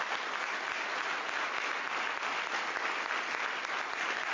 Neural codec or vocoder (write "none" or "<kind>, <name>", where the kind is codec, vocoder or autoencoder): none